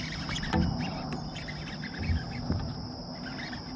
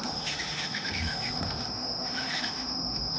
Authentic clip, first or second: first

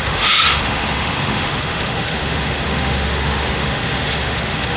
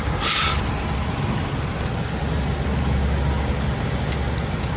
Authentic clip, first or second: second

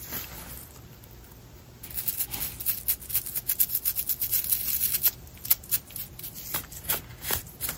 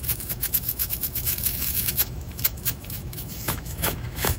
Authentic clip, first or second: first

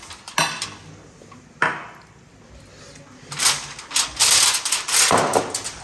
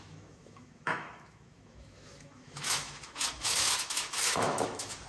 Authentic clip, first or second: first